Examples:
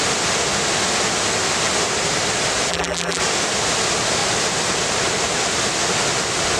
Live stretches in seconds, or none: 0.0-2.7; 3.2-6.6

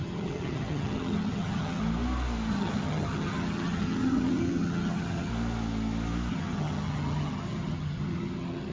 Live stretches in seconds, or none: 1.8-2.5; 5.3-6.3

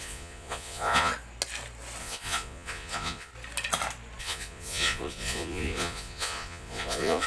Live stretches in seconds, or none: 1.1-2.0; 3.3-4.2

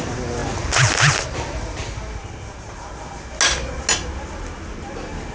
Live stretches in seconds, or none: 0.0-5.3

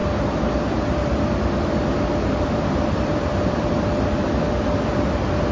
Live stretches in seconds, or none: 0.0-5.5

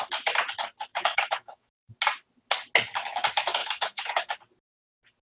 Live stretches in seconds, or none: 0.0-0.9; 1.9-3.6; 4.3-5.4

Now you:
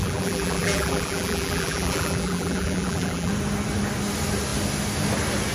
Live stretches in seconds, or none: 3.3-5.5